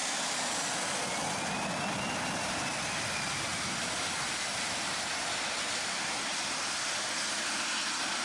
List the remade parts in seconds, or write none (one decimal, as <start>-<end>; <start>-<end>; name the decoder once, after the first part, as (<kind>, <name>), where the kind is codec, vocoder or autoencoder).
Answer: none